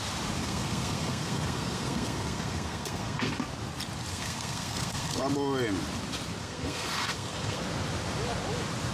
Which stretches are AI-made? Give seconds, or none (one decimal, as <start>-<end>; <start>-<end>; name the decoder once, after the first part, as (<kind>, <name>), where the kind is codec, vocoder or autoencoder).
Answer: 0.4-3.3 (codec, SNAC); 4.1-5.2; 6.4-7.6